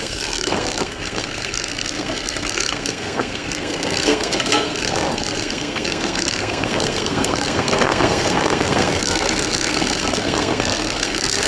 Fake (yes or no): yes